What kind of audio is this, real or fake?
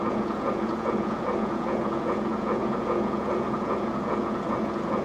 fake